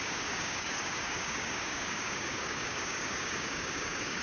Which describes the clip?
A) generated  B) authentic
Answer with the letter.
A